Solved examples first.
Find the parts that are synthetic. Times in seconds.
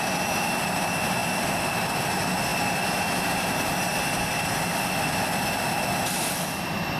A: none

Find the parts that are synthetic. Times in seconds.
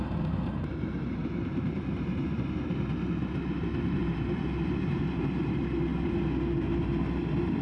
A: 1.2-2.8; 4.0-5.2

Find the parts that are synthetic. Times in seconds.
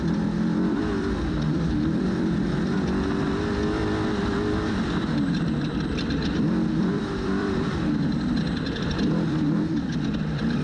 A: 0.0-3.8; 6.8-10.6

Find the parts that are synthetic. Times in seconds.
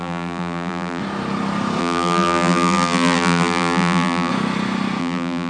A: 0.0-1.0; 1.8-4.3; 5.0-5.5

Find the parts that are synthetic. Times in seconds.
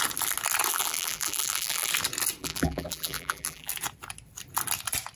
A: 0.7-1.9; 2.4-3.7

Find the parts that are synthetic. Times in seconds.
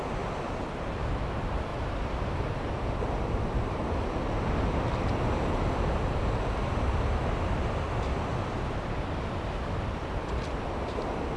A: 1.7-2.7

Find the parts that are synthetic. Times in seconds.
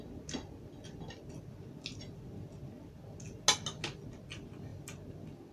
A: none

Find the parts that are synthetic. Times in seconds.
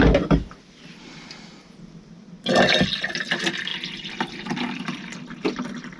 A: none